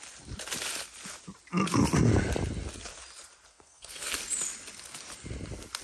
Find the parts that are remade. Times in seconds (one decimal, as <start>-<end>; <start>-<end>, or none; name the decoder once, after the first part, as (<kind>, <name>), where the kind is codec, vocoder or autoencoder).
3.5-4.1 (codec, SNAC)